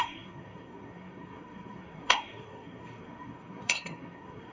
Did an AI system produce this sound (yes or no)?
yes